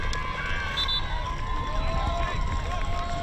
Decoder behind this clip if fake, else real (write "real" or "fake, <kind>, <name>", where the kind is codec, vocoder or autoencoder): real